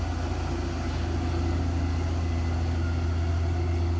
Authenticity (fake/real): real